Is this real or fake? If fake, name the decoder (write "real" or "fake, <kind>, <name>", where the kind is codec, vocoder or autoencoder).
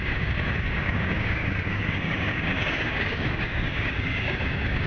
fake, codec, DAC